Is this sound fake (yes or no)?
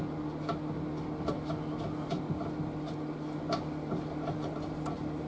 no